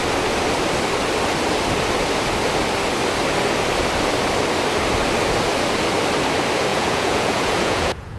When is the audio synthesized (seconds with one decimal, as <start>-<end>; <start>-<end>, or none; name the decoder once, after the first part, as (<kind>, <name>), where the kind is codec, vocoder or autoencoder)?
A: 6.7-8.2 (vocoder, Vocos)